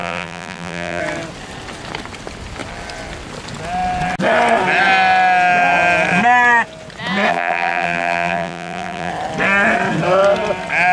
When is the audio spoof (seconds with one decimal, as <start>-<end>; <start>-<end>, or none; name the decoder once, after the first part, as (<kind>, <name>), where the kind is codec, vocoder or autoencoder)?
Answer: 0.0-1.0 (vocoder, BigVGAN v2); 7.3-9.1